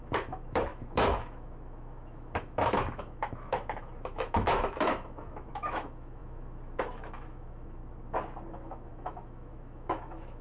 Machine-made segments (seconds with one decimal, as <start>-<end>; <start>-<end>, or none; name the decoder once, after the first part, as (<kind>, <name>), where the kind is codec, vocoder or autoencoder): 0.0-7.8 (autoencoder, DAC-VAE); 8.5-10.4